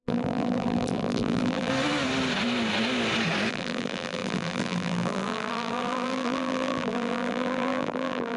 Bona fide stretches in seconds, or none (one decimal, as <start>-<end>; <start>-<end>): 1.7-3.5